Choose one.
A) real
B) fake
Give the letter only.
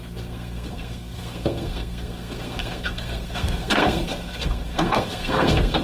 B